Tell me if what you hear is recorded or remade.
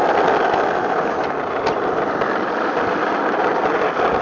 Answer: recorded